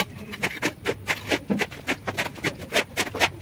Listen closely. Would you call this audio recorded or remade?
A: recorded